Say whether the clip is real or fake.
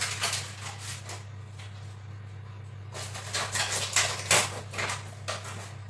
real